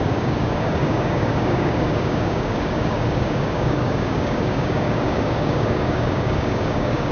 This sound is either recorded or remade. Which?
remade